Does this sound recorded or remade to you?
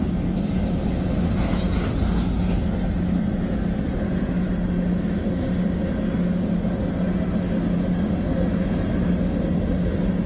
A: recorded